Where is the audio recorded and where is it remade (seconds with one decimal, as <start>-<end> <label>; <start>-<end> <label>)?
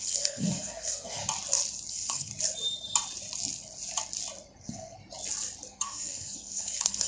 0.0-1.2 remade; 1.2-1.9 recorded; 1.9-2.3 remade; 2.3-4.6 recorded; 4.6-5.0 remade; 5.0-5.7 recorded; 5.7-7.1 remade